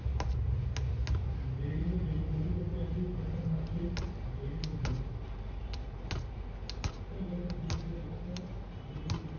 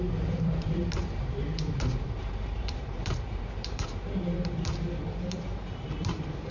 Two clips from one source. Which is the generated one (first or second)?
second